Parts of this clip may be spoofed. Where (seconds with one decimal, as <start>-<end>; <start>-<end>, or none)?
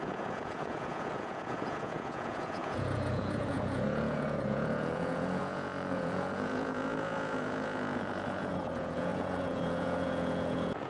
0.0-10.9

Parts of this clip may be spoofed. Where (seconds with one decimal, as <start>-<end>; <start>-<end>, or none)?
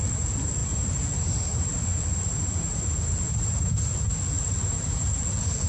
0.6-4.0; 4.6-5.2